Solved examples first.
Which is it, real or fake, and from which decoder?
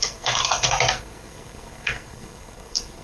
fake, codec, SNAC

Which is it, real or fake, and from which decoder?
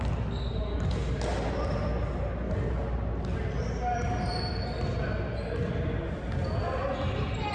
real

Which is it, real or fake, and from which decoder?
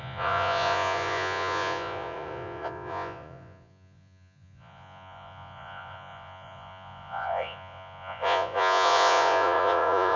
fake, vocoder, Vocos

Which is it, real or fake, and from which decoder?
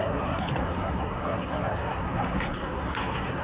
fake, codec, SNAC